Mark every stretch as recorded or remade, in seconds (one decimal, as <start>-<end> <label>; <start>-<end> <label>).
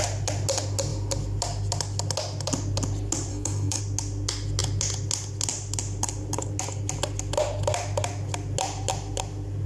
0.0-3.3 recorded; 3.3-3.8 remade; 3.8-9.7 recorded